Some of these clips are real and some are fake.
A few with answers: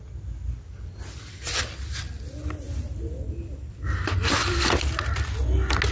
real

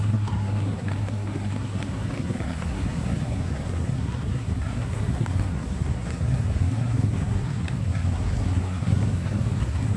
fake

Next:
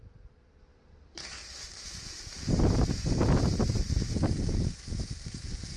fake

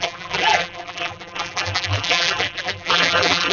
fake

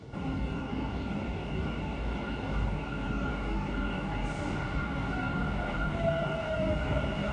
fake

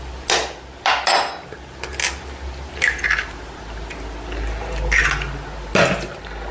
real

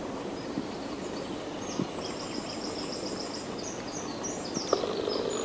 real